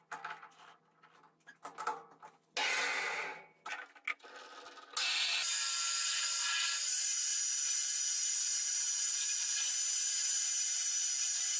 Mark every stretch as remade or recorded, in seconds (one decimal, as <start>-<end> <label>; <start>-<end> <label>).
0.0-11.6 recorded